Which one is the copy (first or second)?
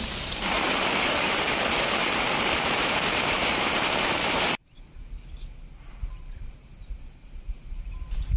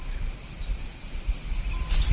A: first